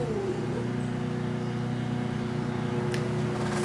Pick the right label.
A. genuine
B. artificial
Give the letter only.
A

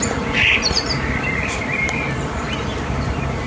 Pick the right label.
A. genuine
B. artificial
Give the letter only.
B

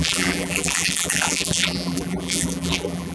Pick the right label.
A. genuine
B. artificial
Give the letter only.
B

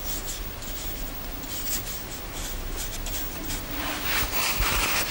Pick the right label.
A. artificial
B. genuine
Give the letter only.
A